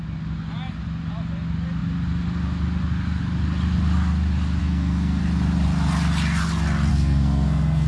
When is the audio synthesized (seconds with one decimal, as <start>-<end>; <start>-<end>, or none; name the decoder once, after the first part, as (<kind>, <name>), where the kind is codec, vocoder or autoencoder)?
4.6-5.2 (codec, SNAC); 6.9-7.9